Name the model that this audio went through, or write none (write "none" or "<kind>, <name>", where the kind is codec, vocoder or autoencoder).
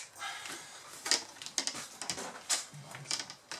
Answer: none